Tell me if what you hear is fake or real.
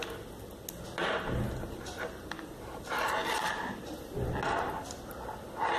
real